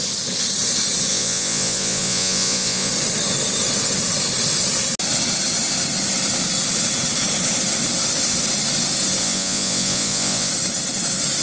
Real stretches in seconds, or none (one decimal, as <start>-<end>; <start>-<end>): 0.0-1.1; 2.9-9.2; 10.5-11.4